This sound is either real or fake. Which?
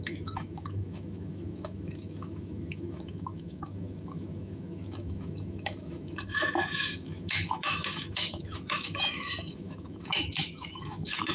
fake